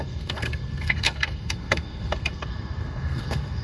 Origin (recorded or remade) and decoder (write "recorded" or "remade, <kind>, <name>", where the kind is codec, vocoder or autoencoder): remade, codec, SNAC